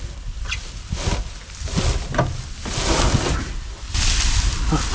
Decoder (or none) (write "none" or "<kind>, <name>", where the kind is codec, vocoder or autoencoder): none